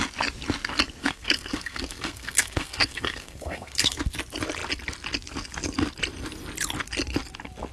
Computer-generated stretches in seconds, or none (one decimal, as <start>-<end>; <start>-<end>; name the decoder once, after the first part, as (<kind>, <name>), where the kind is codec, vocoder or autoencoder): 1.0-4.0 (codec, SNAC)